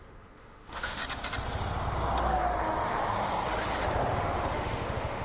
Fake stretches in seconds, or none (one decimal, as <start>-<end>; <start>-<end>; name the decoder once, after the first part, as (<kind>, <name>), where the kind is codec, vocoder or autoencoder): 0.0-1.0 (autoencoder, DAC-VAE); 4.1-5.2